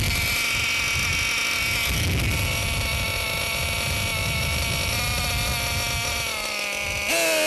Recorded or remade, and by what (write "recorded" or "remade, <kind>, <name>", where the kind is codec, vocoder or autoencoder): recorded